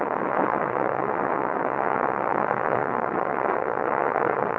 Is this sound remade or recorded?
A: remade